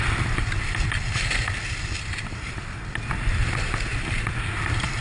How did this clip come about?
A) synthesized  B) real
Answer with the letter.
B